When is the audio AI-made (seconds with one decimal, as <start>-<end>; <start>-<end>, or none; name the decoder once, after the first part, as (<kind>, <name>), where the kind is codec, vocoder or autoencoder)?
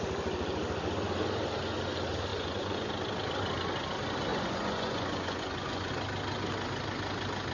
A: 2.3-2.9 (vocoder, Vocos); 4.3-5.9